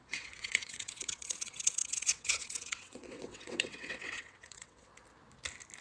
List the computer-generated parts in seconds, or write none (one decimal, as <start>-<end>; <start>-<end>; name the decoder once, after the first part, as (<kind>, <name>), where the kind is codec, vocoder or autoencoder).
0.0-4.9 (vocoder, WaveNeXt)